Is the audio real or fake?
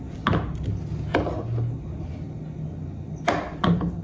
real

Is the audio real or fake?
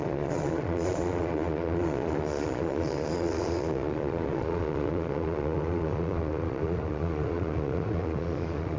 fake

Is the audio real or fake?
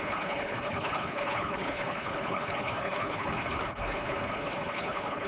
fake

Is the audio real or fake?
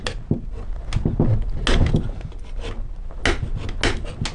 real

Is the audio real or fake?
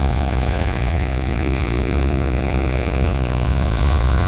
fake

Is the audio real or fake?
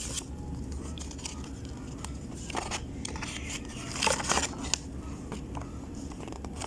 real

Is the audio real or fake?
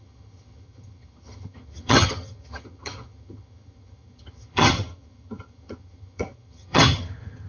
fake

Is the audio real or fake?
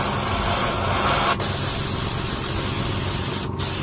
real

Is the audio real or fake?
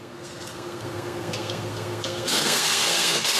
fake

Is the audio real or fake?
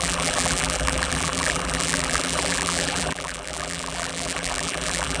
fake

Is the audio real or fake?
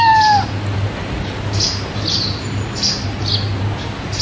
real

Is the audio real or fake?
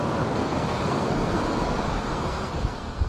fake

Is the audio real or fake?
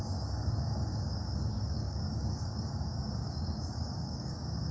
fake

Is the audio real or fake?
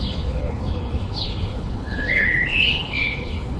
fake